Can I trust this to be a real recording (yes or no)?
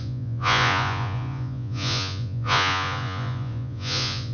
no